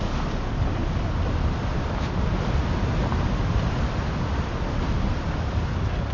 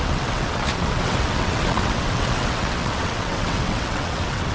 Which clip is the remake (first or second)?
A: second